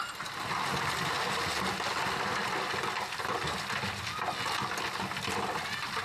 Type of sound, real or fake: real